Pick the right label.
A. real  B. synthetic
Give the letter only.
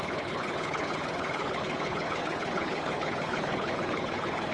B